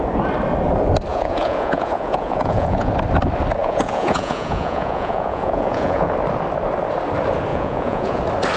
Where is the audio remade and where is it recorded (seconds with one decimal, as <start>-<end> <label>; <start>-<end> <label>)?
0.0-1.1 recorded; 1.1-2.9 remade; 2.9-3.6 recorded; 3.6-6.1 remade; 6.1-7.5 recorded; 7.5-8.2 remade; 8.2-8.6 recorded